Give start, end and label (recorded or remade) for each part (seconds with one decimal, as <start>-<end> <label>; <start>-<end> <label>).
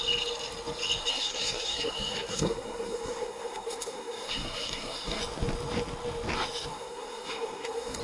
0.0-1.1 recorded; 1.1-5.2 remade; 5.2-6.7 recorded; 6.7-8.0 remade